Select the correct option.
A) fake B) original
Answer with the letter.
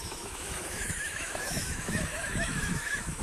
A